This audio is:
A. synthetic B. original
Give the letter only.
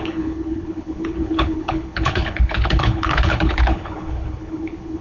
A